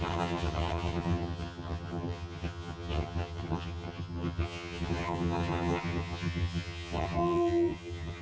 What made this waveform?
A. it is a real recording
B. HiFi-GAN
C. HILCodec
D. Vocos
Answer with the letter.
B